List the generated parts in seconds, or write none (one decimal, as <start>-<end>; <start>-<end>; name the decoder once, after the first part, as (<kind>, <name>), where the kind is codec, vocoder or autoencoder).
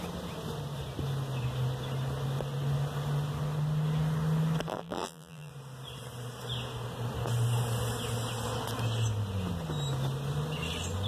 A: 4.7-5.5 (vocoder, BigVGAN v2)